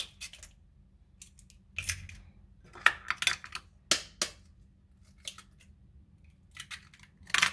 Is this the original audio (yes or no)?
yes